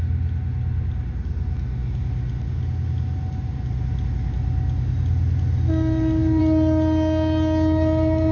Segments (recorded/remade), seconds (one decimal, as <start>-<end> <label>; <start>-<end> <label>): 0.0-8.3 recorded